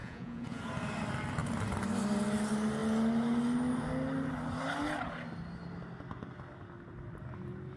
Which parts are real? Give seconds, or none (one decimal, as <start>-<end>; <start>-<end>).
0.6-7.8